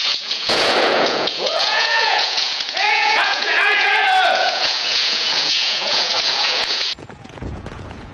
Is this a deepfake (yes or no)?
yes